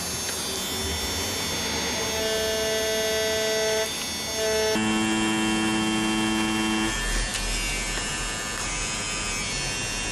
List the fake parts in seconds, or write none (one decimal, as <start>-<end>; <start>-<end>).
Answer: none